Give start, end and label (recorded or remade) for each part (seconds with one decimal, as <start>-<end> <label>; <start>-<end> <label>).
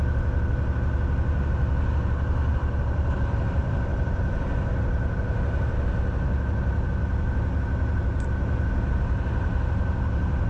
0.0-2.5 recorded; 2.5-3.1 remade; 3.1-3.6 recorded; 3.6-4.4 remade; 4.4-10.5 recorded